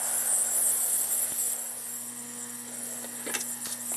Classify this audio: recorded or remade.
recorded